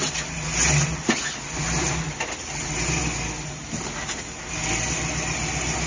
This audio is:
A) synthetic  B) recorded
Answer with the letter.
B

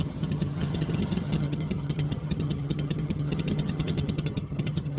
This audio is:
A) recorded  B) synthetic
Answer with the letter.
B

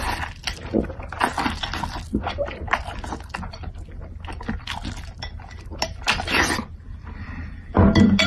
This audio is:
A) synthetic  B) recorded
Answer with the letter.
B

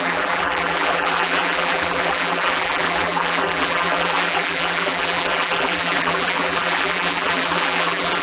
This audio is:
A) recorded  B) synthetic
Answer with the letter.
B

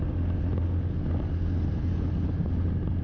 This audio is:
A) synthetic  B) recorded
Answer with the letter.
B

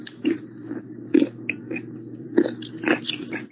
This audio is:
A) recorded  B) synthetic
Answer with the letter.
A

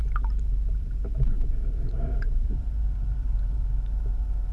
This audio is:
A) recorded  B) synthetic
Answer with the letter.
B